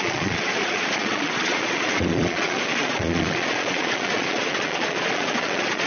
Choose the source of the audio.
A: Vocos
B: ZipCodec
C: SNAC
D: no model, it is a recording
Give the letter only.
A